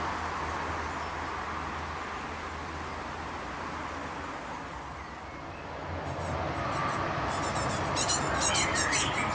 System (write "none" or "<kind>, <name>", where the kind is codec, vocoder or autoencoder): none